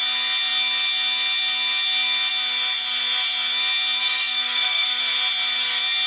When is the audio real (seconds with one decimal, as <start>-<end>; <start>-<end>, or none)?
0.0-4.0; 5.0-6.1